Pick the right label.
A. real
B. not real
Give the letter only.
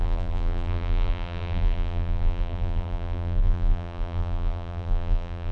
B